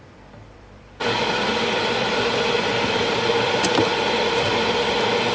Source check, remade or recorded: remade